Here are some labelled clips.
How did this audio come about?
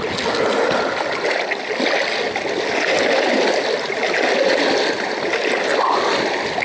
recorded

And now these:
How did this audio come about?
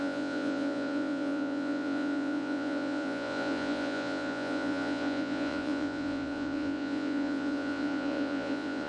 remade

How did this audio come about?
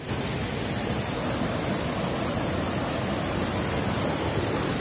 recorded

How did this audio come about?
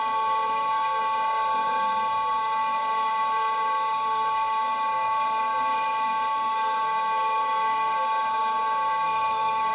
remade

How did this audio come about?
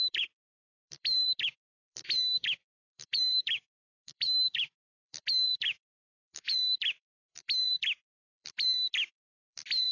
remade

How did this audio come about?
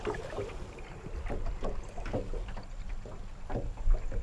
recorded